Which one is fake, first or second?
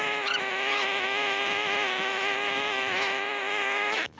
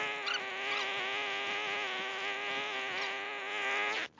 first